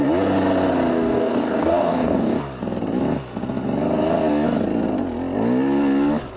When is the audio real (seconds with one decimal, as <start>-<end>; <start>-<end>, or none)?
0.0-0.9; 2.4-6.4